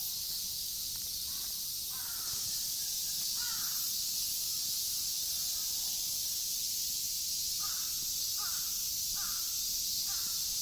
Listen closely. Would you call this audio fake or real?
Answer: real